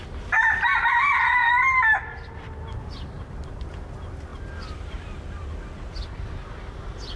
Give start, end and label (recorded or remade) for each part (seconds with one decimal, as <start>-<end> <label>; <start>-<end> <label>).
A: 0.0-7.2 recorded